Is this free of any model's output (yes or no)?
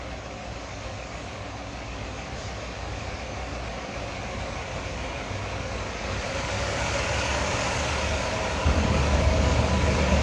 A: no